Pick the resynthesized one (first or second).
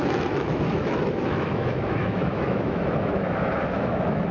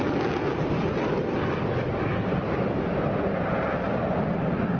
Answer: first